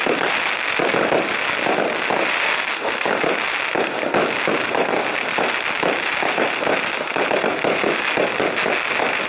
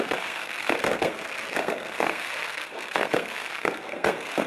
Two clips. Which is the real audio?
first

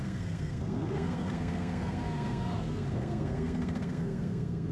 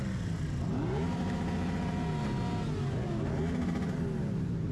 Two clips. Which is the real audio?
second